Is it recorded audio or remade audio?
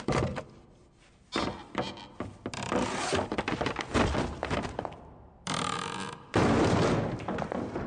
recorded